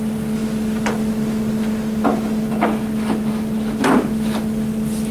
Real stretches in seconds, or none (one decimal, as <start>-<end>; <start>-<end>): 0.0-5.1